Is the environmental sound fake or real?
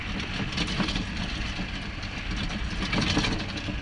real